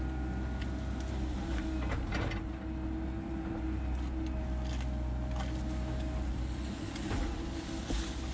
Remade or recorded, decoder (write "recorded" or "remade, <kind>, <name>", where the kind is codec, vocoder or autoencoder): recorded